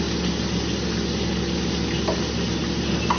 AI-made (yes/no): no